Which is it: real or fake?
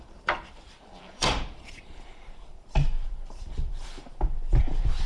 fake